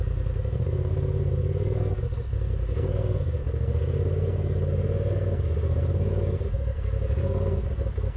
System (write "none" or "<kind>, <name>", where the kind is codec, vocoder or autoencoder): codec, SNAC